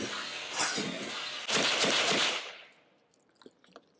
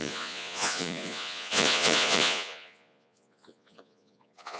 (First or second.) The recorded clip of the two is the first